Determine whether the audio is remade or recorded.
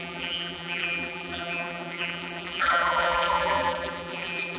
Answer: remade